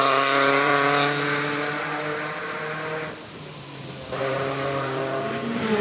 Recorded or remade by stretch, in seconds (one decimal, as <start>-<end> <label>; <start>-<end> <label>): 0.0-0.7 remade; 0.7-4.2 recorded; 4.2-5.8 remade

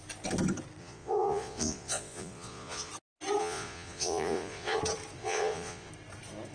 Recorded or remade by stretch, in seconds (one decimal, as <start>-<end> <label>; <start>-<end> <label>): 0.0-0.8 recorded; 0.8-2.9 remade; 2.9-3.4 recorded; 3.4-4.8 remade; 4.8-5.2 recorded; 5.2-5.9 remade; 5.9-6.5 recorded

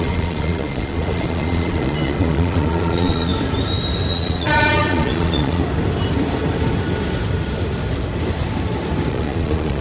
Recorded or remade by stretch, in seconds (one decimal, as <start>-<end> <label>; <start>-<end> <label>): 0.0-3.3 remade; 3.3-4.1 recorded; 4.1-5.6 remade; 5.6-9.1 recorded; 9.1-9.8 remade

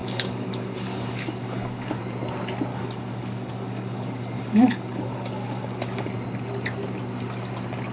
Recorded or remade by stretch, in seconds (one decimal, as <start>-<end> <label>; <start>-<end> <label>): 0.0-2.0 remade; 2.0-2.7 recorded; 2.7-6.1 remade; 6.1-7.9 recorded